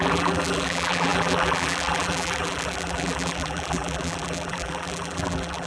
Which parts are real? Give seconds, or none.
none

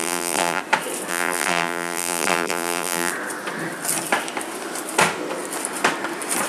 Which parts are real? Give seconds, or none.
0.6-1.1; 3.1-6.5

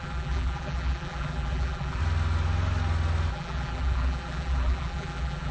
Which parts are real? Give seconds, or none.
2.0-3.3

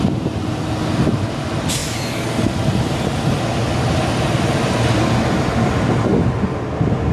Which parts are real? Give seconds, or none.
0.0-7.1

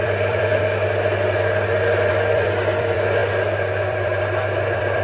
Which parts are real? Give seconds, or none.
0.5-2.1

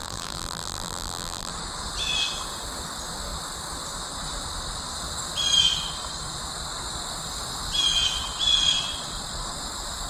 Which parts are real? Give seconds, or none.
1.5-10.1

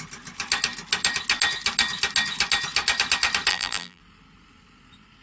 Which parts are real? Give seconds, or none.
0.0-3.5; 4.0-5.2